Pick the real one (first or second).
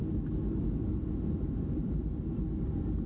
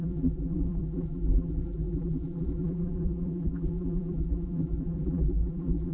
first